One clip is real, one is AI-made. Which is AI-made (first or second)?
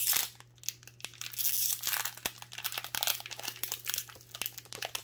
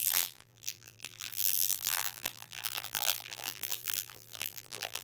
second